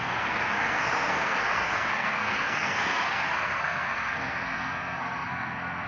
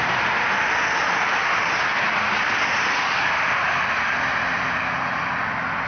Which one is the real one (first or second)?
second